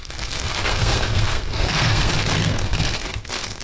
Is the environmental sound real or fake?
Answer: fake